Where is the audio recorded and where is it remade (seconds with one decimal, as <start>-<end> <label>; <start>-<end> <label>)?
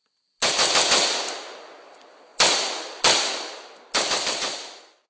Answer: 0.0-5.1 recorded